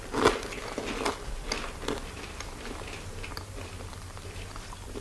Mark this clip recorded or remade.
recorded